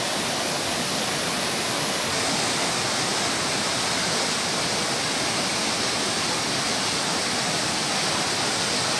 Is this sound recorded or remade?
recorded